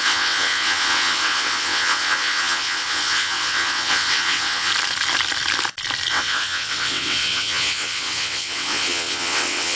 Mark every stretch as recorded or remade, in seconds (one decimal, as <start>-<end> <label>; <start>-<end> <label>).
0.0-4.7 remade; 4.7-6.1 recorded; 6.1-9.8 remade